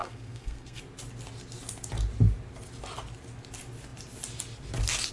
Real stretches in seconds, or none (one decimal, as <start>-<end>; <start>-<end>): 0.8-5.1